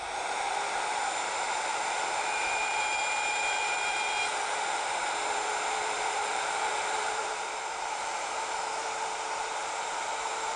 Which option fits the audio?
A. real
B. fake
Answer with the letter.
B